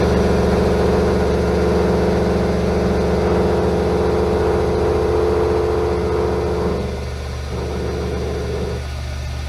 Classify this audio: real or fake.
real